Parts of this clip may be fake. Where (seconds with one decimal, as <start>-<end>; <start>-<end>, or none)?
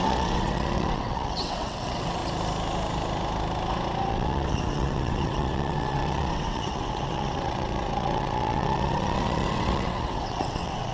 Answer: 0.0-2.2; 4.1-10.9